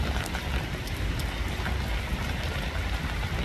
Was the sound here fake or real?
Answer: fake